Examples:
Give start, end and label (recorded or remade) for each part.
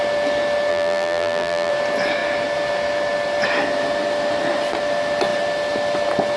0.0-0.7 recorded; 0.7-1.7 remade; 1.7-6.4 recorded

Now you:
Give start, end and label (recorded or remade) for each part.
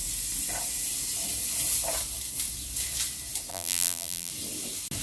0.0-3.5 recorded; 3.5-4.3 remade; 4.3-5.0 recorded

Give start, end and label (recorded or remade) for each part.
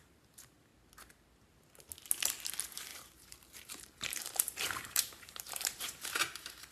0.0-0.7 remade; 0.7-2.5 recorded; 2.5-6.7 remade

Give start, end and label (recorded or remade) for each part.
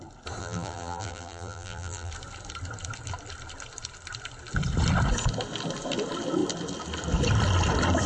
0.0-0.4 recorded; 0.4-2.1 remade; 2.1-8.1 recorded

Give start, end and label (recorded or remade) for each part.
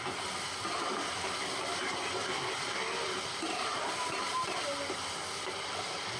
0.0-0.9 recorded; 0.9-4.6 remade; 4.6-6.2 recorded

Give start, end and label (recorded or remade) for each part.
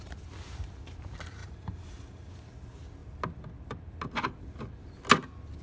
0.0-1.4 recorded; 1.4-2.3 remade; 2.3-5.6 recorded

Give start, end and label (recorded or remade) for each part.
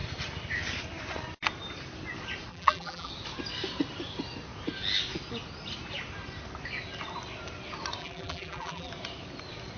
0.0-2.5 recorded; 2.5-3.1 remade; 3.1-8.0 recorded; 8.0-8.9 remade; 8.9-9.8 recorded